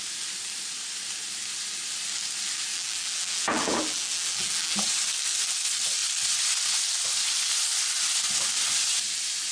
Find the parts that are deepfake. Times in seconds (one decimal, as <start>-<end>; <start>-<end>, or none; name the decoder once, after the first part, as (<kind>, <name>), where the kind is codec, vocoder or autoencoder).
2.7-4.9 (vocoder, BigVGAN v2)